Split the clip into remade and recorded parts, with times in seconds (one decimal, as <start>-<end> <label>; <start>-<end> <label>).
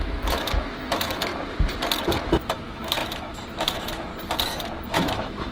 0.0-1.3 remade; 1.3-2.2 recorded; 2.2-4.1 remade; 4.1-4.9 recorded; 4.9-5.5 remade